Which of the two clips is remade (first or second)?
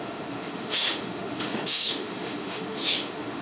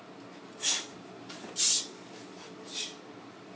first